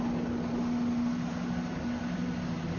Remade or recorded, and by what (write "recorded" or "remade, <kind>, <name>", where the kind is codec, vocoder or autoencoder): recorded